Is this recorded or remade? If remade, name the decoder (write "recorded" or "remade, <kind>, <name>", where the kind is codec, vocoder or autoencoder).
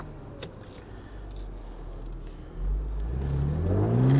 recorded